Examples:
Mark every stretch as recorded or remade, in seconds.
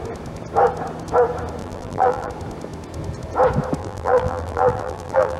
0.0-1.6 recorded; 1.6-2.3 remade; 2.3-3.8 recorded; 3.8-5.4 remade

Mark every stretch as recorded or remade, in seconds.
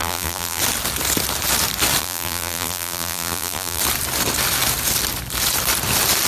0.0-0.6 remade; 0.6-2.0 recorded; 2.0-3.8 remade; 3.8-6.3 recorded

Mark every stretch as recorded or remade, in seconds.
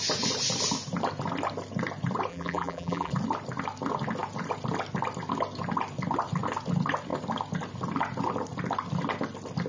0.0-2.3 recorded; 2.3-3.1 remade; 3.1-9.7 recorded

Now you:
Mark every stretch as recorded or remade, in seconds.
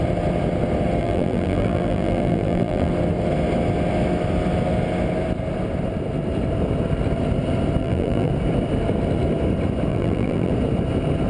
0.0-1.0 recorded; 1.0-2.9 remade; 2.9-7.8 recorded; 7.8-8.3 remade; 8.3-9.9 recorded; 9.9-10.5 remade; 10.5-11.3 recorded